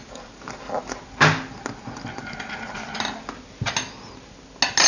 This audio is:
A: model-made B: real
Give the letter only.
B